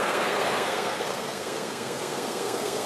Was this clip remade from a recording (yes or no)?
yes